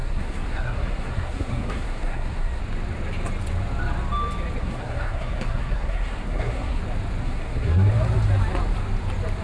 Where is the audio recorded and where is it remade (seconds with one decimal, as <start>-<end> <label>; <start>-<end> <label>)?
0.0-2.6 remade; 2.6-4.6 recorded; 4.6-6.8 remade; 6.8-7.2 recorded; 7.2-7.9 remade; 7.9-9.4 recorded